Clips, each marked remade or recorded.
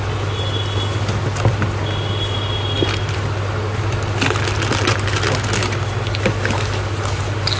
recorded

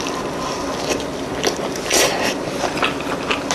recorded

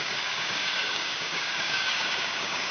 remade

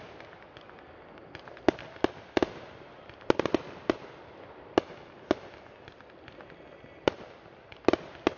recorded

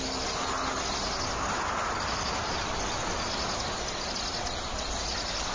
recorded